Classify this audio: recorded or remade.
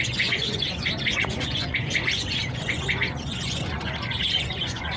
remade